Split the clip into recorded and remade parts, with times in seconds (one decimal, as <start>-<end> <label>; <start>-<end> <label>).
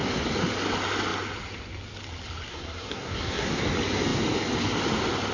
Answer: 0.0-2.5 recorded; 2.5-3.6 remade; 3.6-5.3 recorded